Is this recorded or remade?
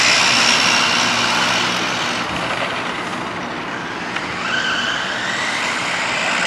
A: recorded